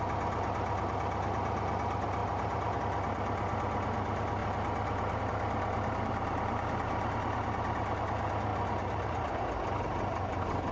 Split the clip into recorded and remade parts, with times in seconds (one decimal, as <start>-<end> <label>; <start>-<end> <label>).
0.0-2.2 recorded; 2.2-2.8 remade; 2.8-4.4 recorded; 4.4-5.2 remade; 5.2-8.5 recorded; 8.5-9.4 remade; 9.4-10.7 recorded